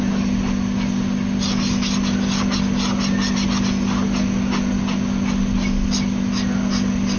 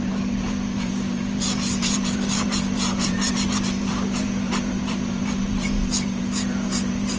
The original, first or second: first